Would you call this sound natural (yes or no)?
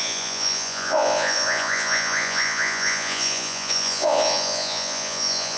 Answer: no